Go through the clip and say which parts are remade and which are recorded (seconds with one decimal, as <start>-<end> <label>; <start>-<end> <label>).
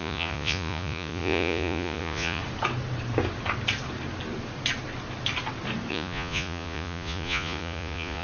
0.0-2.4 remade; 2.4-5.9 recorded; 5.9-8.2 remade